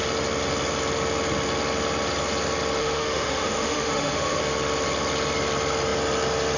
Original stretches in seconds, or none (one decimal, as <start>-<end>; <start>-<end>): 0.0-2.8; 4.4-6.6